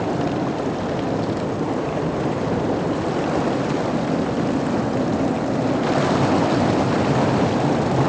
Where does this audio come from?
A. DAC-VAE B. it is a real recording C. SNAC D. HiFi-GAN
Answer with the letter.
B